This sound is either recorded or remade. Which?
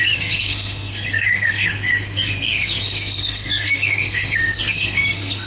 remade